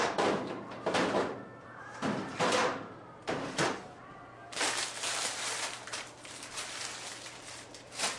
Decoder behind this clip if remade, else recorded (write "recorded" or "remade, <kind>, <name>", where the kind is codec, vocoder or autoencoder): remade, vocoder, BigVGAN v2